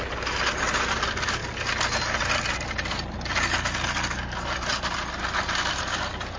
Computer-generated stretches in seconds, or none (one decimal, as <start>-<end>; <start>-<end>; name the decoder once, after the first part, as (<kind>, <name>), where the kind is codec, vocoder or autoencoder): none